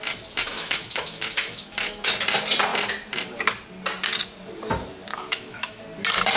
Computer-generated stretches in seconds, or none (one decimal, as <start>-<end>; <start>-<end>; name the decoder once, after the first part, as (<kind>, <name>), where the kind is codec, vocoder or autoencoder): 0.5-2.1 (autoencoder, DAC-VAE); 5.1-5.8